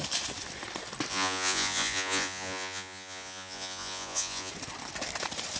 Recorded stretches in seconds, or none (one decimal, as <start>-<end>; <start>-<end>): 0.0-1.1; 4.5-5.6